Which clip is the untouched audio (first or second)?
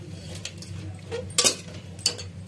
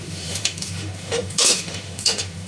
first